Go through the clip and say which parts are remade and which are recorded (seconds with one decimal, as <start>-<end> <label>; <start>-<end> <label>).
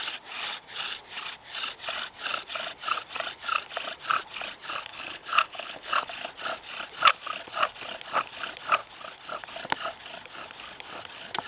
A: 0.0-4.9 recorded; 4.9-6.1 remade; 6.1-11.5 recorded